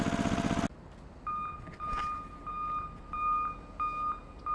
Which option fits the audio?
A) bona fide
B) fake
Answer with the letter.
A